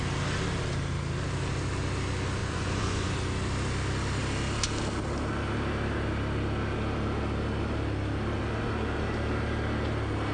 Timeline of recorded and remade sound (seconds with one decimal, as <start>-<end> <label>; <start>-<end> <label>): 0.0-2.4 recorded; 2.4-3.1 remade; 3.1-10.3 recorded

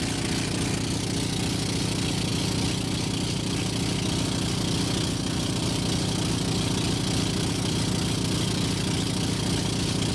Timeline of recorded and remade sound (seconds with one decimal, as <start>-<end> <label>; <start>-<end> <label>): 0.0-10.1 recorded

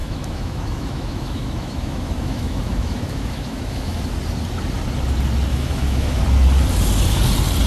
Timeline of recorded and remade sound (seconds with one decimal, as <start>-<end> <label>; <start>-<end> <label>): 0.0-4.0 remade; 4.0-5.5 recorded; 5.5-6.2 remade; 6.2-7.7 recorded